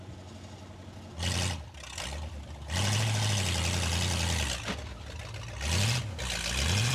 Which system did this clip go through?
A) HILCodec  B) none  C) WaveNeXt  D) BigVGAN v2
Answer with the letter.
B